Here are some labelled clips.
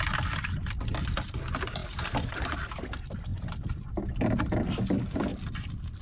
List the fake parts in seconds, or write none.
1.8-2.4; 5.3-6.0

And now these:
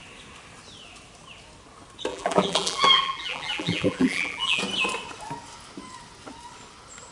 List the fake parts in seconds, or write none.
2.1-4.6

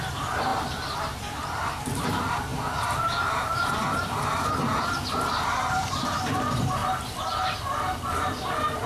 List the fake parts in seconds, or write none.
0.0-0.5; 1.0-6.8; 8.5-8.9